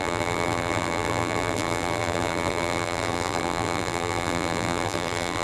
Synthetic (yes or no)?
yes